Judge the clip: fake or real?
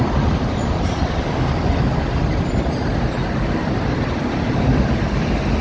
fake